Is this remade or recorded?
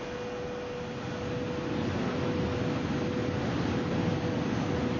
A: recorded